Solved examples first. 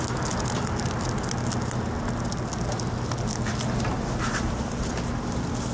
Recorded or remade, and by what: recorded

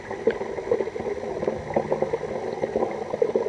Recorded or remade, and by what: recorded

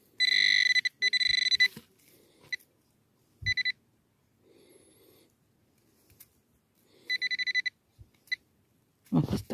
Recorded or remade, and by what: recorded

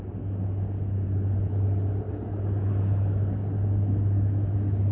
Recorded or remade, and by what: recorded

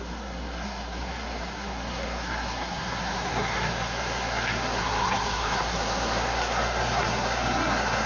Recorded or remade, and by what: remade, codec, SNAC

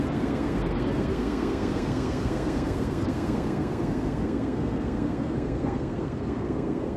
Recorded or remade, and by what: remade, codec, SNAC